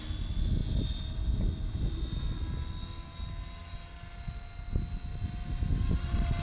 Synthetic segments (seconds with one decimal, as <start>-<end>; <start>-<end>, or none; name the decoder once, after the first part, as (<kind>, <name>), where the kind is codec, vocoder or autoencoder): none